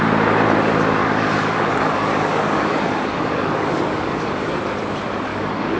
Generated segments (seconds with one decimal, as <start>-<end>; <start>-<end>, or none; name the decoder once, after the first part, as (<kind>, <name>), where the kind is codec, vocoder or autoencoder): 1.0-4.5 (codec, DAC); 5.3-5.8